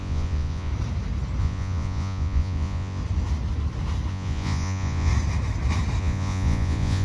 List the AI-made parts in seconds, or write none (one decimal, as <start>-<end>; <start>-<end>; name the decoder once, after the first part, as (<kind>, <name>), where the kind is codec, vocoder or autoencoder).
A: 0.0-0.7 (vocoder, Vocos); 1.4-3.0; 4.1-5.1; 6.0-7.0